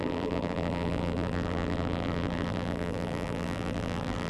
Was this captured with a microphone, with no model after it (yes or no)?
no